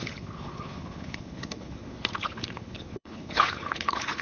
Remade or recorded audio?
remade